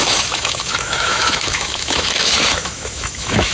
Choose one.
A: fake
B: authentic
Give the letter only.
A